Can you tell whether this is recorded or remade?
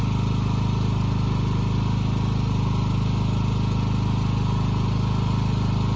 recorded